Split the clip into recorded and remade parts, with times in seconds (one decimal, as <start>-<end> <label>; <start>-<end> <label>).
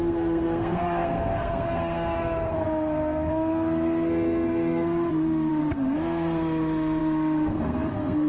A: 0.0-8.3 remade